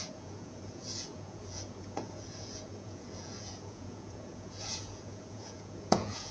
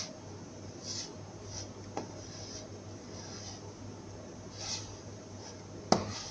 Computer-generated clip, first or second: first